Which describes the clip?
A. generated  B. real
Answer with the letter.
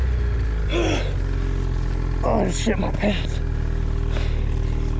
B